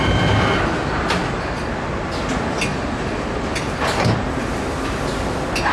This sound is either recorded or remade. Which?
recorded